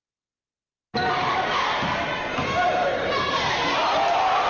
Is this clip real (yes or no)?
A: yes